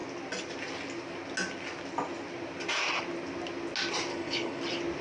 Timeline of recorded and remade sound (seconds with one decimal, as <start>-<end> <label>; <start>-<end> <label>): 0.0-4.1 recorded; 4.1-4.6 remade; 4.6-5.0 recorded